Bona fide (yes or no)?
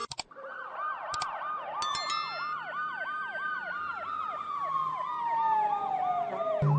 yes